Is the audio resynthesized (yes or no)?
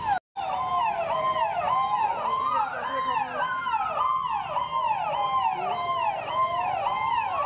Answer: no